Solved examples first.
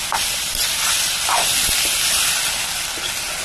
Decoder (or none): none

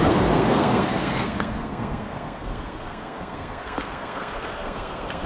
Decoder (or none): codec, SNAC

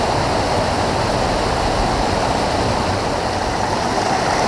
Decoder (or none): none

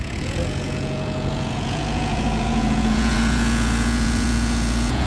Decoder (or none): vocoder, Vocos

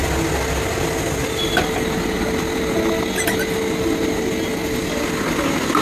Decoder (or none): none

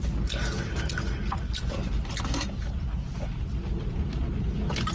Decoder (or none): none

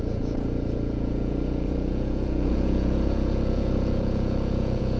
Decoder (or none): vocoder, Vocos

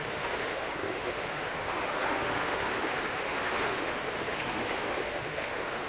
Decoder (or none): autoencoder, DAC-VAE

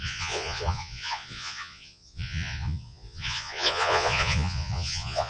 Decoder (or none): vocoder, Vocos